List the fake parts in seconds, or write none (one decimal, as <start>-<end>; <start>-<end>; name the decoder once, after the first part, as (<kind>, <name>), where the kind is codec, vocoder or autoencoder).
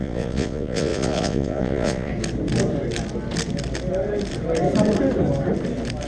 0.0-2.1 (vocoder, Vocos)